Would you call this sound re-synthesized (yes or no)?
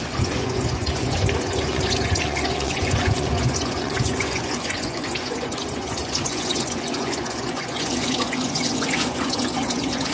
yes